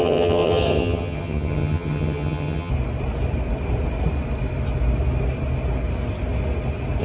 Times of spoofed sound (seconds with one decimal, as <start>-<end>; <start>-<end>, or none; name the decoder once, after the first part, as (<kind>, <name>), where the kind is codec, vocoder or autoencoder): 0.0-2.7 (vocoder, HiFi-GAN)